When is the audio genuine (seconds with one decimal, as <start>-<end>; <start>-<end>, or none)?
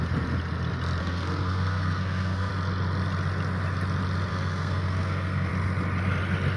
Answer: 0.0-1.0; 2.5-4.3; 5.5-6.6